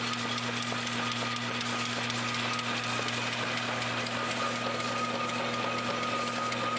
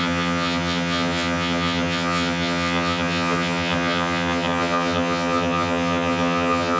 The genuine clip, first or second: first